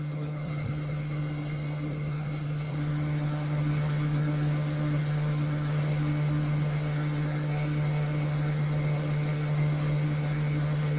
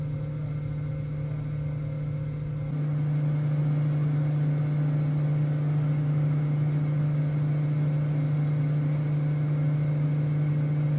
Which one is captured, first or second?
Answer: second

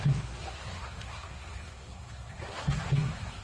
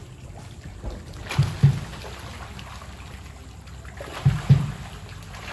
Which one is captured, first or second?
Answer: second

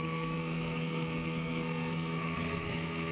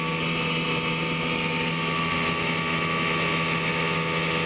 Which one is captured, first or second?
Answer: second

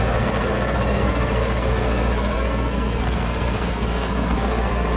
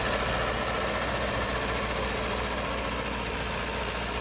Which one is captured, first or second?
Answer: second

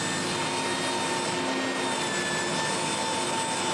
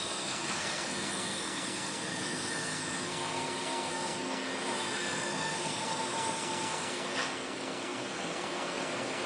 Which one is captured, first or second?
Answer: first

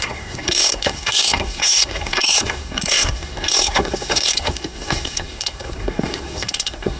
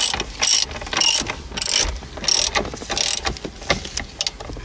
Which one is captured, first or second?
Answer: second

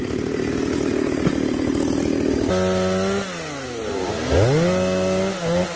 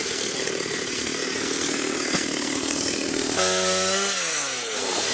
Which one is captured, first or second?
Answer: first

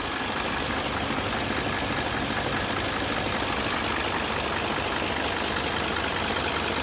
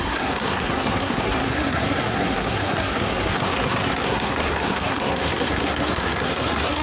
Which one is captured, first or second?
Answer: first